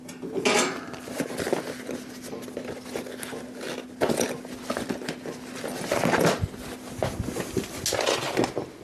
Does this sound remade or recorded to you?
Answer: recorded